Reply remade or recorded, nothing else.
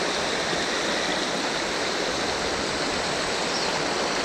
recorded